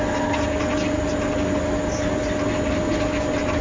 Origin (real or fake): real